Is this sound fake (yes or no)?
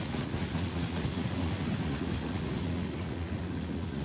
yes